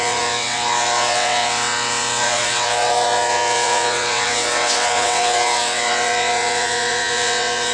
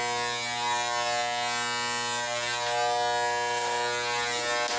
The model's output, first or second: first